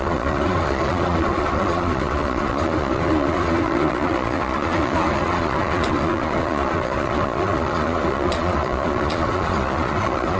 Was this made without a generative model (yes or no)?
no